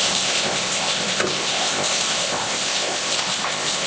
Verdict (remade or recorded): remade